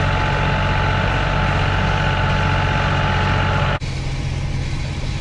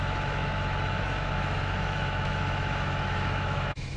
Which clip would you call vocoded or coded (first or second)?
second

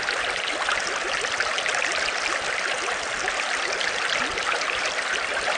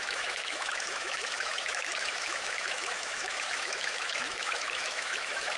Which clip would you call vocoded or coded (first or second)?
second